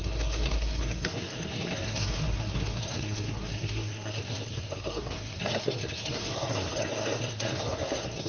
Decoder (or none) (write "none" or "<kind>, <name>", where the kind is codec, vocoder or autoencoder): codec, SNAC